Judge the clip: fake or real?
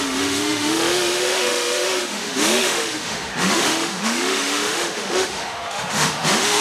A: fake